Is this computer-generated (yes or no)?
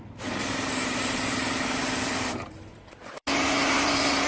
yes